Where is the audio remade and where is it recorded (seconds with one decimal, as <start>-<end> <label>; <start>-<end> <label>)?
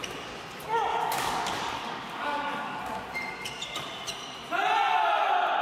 0.0-0.9 recorded; 0.9-2.8 remade; 2.8-5.6 recorded